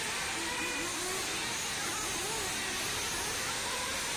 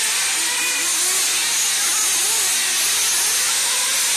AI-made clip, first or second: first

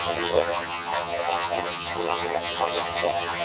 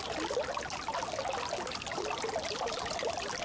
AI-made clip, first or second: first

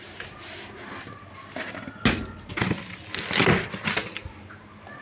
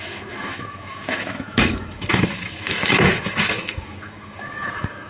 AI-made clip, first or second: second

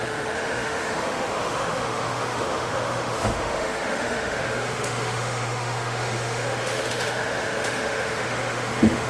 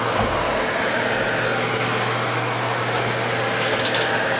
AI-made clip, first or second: first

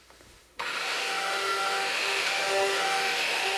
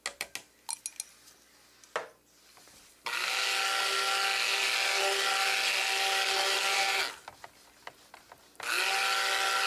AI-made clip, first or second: first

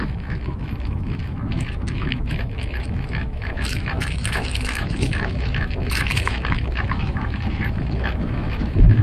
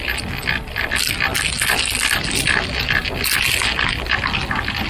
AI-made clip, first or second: first